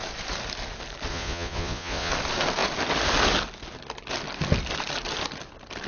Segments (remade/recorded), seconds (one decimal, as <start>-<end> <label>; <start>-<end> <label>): 0.0-1.1 recorded; 1.1-2.1 remade; 2.1-5.9 recorded